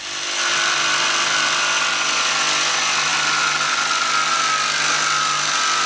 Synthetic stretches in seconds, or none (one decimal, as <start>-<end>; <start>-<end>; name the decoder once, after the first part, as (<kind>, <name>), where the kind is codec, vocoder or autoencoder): none